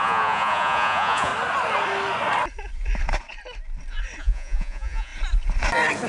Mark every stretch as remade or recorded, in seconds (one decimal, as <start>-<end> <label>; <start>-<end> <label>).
0.0-1.3 remade; 1.3-4.2 recorded; 4.2-5.1 remade; 5.1-6.1 recorded